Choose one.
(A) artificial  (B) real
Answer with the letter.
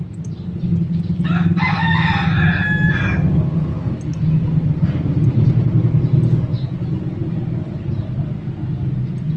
B